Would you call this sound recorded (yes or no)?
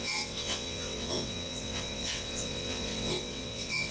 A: no